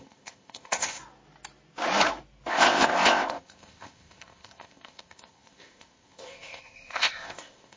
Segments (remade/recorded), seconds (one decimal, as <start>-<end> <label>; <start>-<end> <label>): 0.0-1.0 remade; 1.0-2.5 recorded; 2.5-7.8 remade

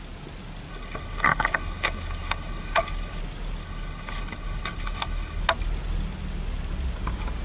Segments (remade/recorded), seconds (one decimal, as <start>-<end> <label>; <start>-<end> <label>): 0.0-0.7 recorded; 0.7-3.2 remade; 3.2-3.6 recorded; 3.6-5.4 remade; 5.4-7.4 recorded

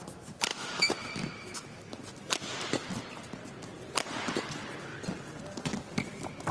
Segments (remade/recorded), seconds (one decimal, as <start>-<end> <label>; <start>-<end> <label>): 0.0-0.5 recorded; 0.5-2.1 remade; 2.1-6.5 recorded

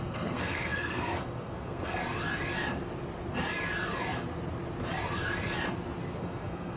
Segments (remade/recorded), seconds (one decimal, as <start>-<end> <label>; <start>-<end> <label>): 0.0-2.0 remade; 2.0-6.1 recorded; 6.1-6.8 remade

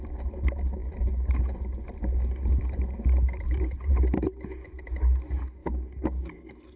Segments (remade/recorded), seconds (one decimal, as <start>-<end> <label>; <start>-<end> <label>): 0.0-6.8 recorded

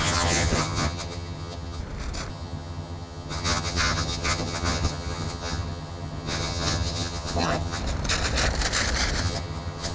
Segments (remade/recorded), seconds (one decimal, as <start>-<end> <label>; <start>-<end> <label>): 0.0-1.8 remade; 1.8-2.3 recorded; 2.3-7.8 remade; 7.8-9.2 recorded; 9.2-9.9 remade